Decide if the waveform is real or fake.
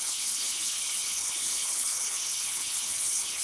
fake